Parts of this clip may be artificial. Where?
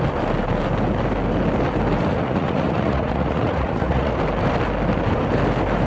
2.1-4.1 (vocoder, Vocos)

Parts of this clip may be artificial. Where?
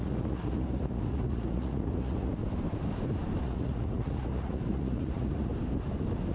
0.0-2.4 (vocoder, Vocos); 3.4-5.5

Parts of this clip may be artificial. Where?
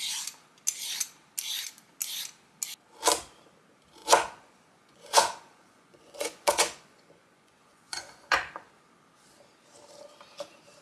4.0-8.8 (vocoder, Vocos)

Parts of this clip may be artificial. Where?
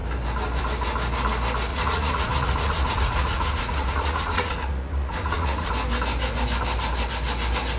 1.7-5.7 (vocoder, Vocos)